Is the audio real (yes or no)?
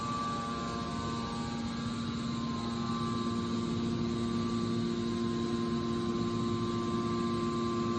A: yes